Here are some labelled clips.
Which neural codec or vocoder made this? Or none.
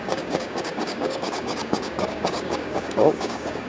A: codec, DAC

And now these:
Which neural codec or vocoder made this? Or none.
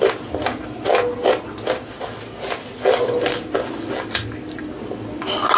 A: none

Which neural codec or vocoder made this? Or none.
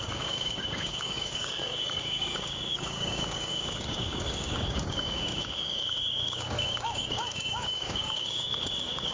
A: codec, DAC